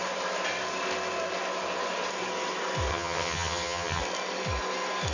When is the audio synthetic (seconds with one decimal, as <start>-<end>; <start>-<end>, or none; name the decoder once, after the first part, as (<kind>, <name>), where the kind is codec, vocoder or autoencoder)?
2.9-4.0 (vocoder, HiFi-GAN)